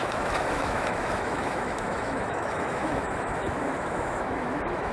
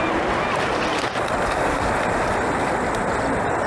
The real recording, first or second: second